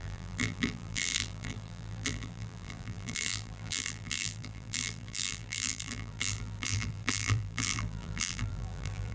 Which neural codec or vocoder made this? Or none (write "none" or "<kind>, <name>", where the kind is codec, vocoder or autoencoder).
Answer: vocoder, BigVGAN v2